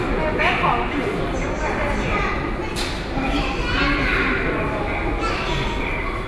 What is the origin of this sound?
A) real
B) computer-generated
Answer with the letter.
A